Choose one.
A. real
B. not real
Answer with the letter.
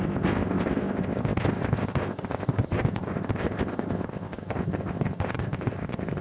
B